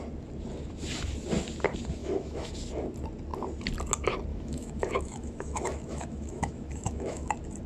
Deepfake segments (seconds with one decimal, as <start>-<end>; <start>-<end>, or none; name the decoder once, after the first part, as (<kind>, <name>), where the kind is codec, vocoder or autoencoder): 2.0-2.5 (autoencoder, DAC-VAE); 4.3-7.3